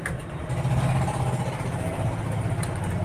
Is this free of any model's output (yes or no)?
yes